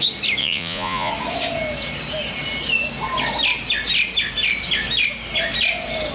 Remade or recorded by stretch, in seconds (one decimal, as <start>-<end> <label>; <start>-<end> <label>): 0.0-0.4 recorded; 0.4-1.1 remade; 1.1-6.1 recorded